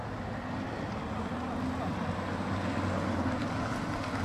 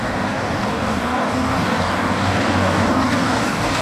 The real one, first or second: first